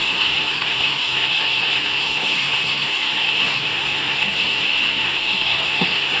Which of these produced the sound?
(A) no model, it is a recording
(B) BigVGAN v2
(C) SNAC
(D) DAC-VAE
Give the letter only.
C